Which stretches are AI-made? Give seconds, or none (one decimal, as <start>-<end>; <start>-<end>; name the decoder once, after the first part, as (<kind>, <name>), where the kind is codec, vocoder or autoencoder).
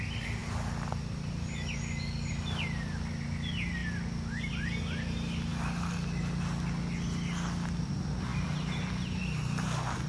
none